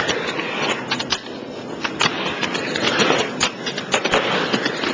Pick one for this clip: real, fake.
fake